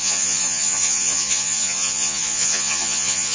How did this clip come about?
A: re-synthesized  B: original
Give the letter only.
A